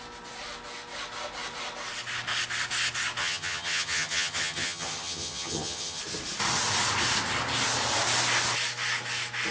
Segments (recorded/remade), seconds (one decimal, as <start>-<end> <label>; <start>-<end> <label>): 0.0-3.2 recorded; 3.2-6.0 remade; 6.0-9.5 recorded